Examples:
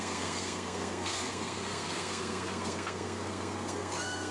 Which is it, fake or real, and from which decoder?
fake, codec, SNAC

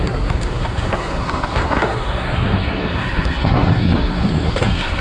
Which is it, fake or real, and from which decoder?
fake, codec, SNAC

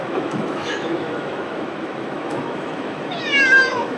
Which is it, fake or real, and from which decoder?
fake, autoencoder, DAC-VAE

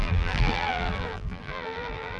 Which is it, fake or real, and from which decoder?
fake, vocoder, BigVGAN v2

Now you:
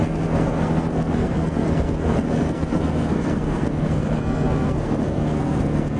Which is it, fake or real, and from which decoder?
fake, codec, SNAC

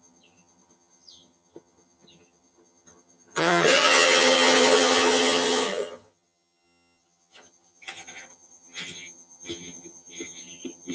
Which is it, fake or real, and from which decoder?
fake, vocoder, HiFi-GAN